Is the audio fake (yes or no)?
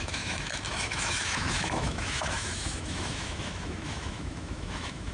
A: yes